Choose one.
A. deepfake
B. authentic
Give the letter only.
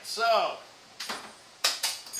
A